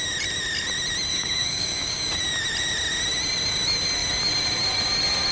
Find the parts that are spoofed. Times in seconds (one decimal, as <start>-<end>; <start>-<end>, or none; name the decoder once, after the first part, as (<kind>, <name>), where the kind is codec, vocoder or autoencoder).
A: 1.1-2.1 (codec, DAC)